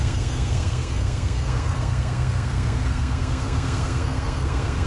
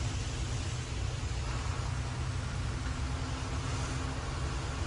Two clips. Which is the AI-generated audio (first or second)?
first